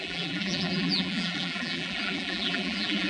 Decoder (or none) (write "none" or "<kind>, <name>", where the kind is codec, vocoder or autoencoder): vocoder, BigVGAN v2